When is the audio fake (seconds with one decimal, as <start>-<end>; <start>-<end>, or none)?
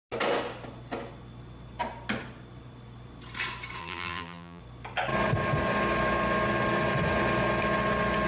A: 3.8-4.6